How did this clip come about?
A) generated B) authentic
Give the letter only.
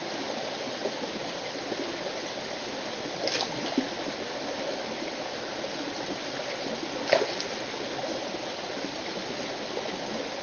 B